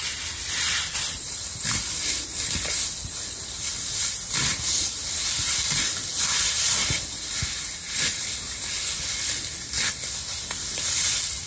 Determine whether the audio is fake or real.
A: real